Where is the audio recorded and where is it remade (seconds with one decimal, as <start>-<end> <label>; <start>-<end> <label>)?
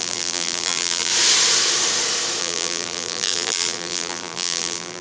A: 0.0-1.1 remade; 1.1-2.4 recorded; 2.4-5.0 remade